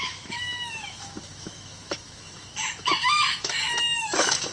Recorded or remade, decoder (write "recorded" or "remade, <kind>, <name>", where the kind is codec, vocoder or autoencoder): remade, autoencoder, DAC-VAE